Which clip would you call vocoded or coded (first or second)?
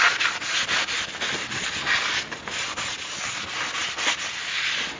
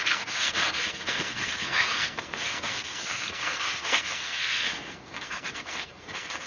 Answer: second